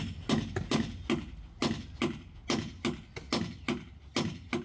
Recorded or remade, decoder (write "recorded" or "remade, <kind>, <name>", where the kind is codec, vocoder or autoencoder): recorded